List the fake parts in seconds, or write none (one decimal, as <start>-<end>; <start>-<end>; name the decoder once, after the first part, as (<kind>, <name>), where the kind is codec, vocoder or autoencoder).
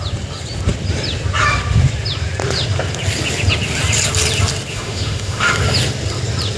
4.7-5.5 (autoencoder, DAC-VAE)